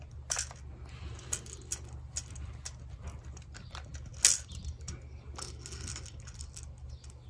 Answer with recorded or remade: recorded